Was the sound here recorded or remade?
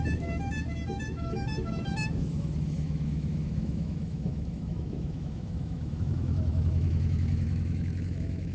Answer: remade